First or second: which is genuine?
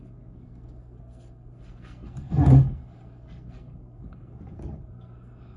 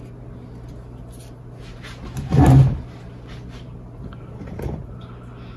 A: second